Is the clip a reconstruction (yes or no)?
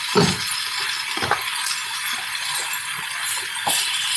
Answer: yes